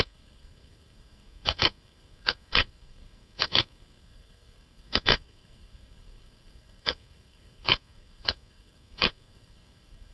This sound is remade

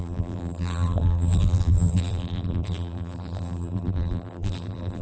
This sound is remade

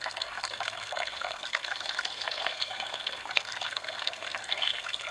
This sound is remade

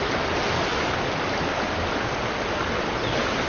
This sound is recorded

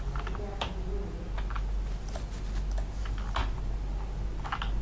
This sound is recorded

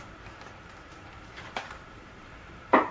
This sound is remade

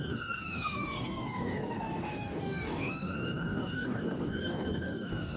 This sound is remade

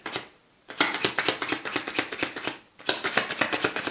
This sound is recorded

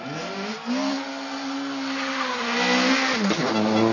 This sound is recorded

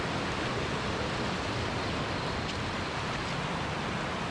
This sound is recorded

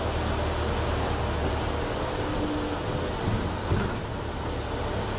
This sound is recorded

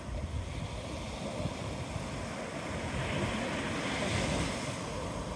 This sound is recorded